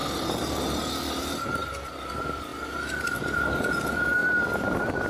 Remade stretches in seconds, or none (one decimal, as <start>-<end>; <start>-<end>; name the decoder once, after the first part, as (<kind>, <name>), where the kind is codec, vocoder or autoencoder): 1.2-1.6 (vocoder, BigVGAN v2); 2.1-5.1